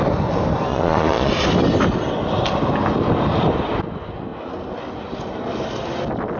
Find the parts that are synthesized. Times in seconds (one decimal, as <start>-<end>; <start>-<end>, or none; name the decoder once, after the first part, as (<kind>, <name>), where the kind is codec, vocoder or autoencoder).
0.7-1.3 (vocoder, Vocos)